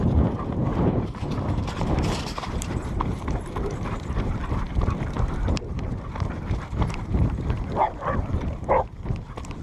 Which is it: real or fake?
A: fake